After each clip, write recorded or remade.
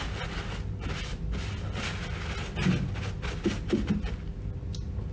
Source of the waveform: recorded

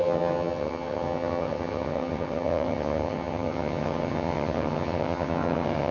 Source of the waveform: remade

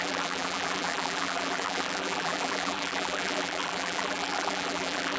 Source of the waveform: remade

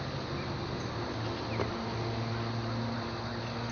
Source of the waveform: recorded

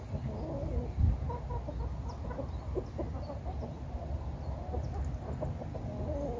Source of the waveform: recorded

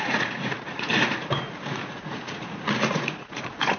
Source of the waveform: remade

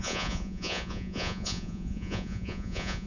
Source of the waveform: remade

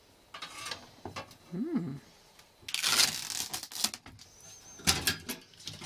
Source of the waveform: recorded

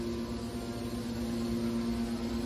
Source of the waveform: recorded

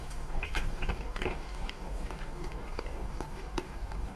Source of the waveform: remade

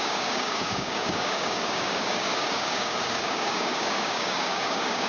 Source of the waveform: remade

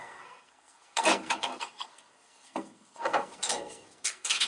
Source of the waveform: remade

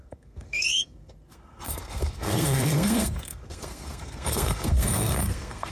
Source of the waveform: remade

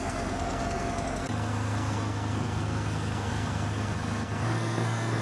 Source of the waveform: remade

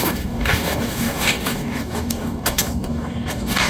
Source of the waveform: remade